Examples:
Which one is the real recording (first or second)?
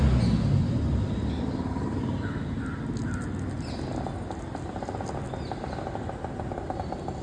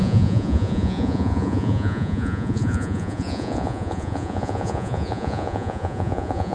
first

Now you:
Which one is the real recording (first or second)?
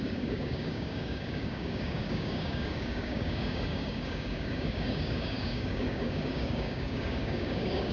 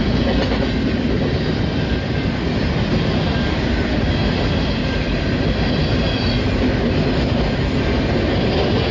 second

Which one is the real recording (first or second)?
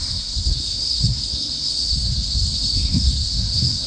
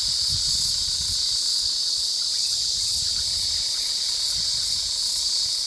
second